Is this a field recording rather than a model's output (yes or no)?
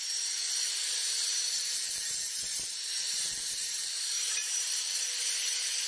no